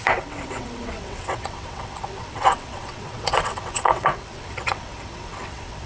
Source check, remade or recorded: remade